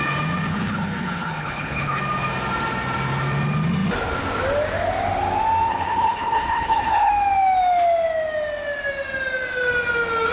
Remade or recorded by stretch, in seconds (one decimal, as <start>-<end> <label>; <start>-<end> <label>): 0.0-0.5 recorded; 0.5-2.0 remade; 2.0-5.7 recorded; 5.7-7.1 remade; 7.1-10.3 recorded